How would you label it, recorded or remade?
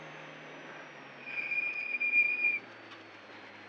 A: remade